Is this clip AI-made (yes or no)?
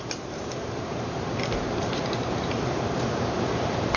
yes